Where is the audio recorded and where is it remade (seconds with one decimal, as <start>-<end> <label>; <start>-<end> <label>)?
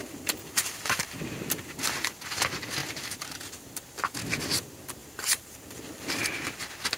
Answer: 0.0-1.6 remade; 1.6-2.8 recorded; 2.8-3.4 remade; 3.4-5.0 recorded; 5.0-6.1 remade; 6.1-7.0 recorded